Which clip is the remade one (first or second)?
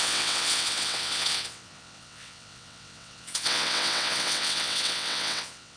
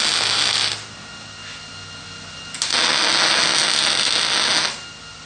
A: first